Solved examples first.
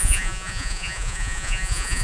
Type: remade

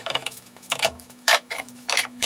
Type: remade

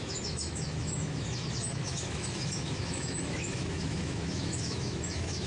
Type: remade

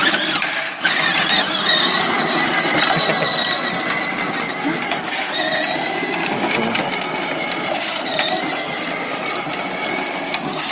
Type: recorded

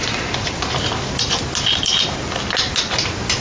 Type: recorded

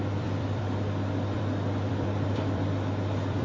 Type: remade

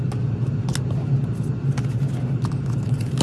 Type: recorded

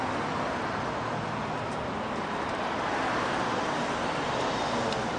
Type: recorded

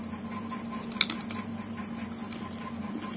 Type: recorded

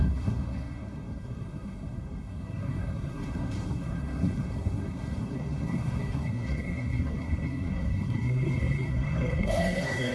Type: remade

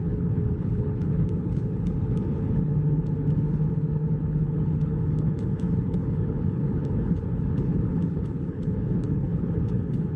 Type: remade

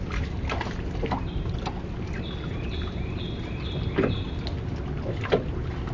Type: recorded